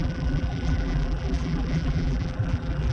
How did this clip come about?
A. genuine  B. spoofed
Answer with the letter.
B